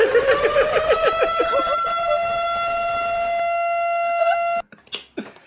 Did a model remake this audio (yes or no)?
no